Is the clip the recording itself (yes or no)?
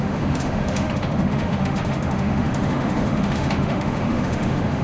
no